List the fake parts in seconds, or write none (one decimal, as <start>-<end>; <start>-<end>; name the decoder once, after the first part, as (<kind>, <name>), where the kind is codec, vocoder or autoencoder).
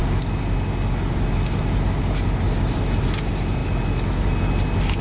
none